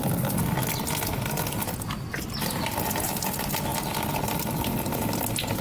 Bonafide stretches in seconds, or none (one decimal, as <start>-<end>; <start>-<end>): 0.0-5.6